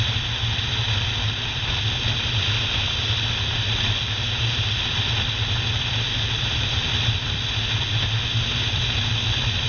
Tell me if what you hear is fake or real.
real